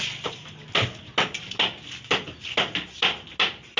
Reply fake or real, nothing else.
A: real